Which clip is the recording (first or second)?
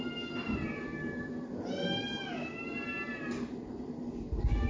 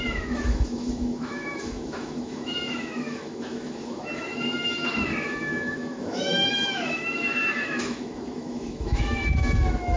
first